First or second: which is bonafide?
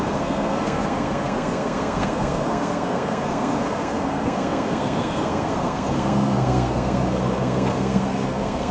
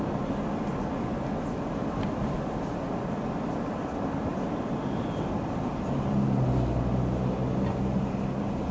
second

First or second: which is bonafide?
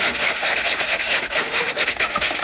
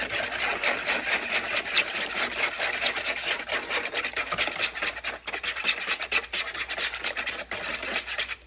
second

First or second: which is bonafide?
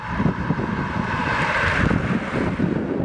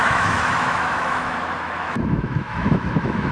first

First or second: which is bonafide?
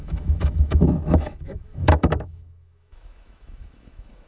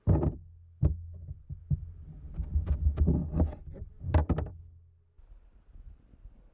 second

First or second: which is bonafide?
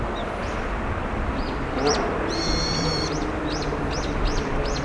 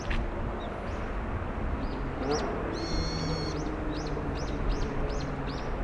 second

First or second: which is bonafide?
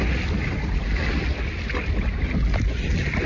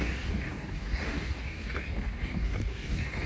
first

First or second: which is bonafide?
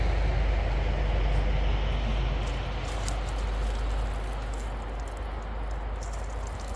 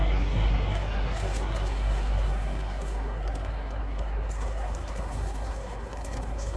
first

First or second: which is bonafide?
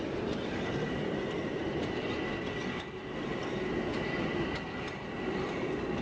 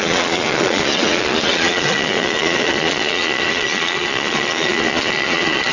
first